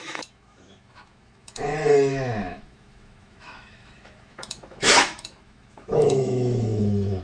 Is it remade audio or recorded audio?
remade